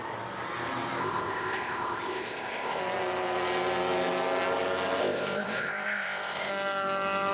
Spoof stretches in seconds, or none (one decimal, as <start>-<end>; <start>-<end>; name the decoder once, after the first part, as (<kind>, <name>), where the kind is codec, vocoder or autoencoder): 1.0-2.8 (codec, ZipCodec); 5.0-6.5